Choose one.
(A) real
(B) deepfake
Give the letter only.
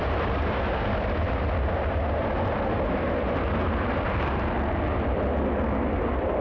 A